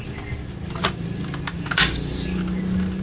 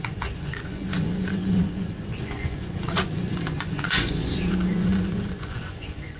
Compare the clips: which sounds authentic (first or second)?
first